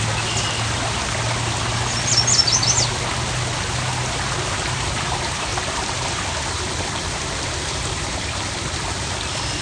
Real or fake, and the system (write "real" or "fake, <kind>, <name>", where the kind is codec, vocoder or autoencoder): real